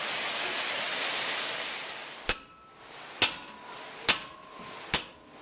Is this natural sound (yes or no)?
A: yes